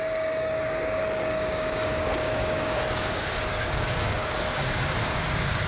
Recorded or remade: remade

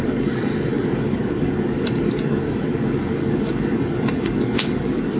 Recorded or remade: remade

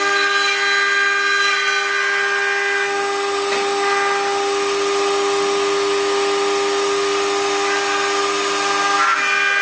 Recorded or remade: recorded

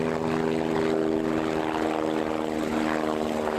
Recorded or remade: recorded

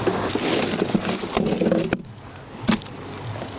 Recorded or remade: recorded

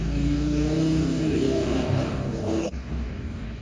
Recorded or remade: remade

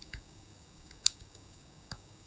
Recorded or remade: remade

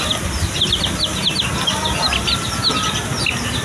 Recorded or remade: recorded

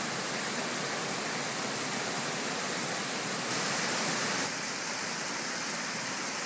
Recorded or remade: recorded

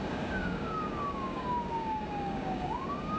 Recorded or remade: remade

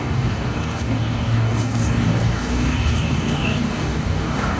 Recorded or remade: remade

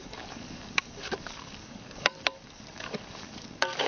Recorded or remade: remade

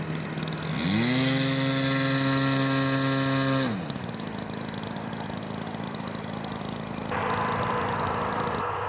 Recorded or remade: recorded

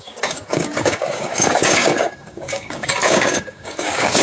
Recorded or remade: remade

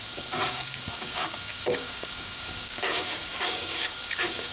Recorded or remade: remade